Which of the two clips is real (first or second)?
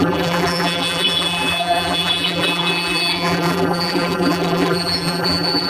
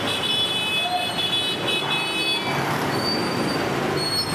second